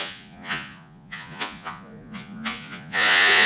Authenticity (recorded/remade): remade